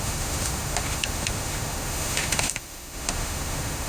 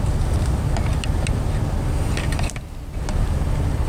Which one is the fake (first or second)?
first